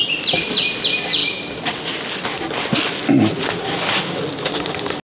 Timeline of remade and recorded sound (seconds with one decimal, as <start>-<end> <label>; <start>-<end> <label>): 0.0-5.2 recorded